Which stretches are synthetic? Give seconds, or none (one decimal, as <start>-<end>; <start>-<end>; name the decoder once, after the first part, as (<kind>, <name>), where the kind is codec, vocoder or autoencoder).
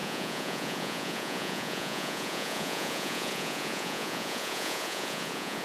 0.0-5.6 (vocoder, Vocos)